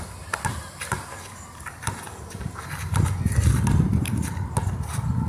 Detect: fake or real real